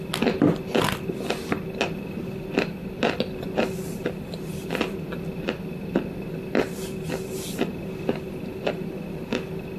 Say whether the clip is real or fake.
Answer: real